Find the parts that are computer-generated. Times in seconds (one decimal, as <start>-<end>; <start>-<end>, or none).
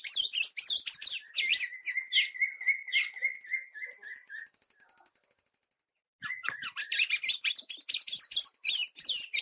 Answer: none